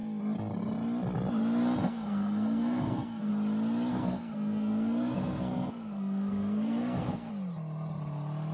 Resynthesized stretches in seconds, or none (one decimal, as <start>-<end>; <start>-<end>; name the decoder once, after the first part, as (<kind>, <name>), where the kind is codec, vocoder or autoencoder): 1.8-3.3 (codec, SNAC); 3.9-7.3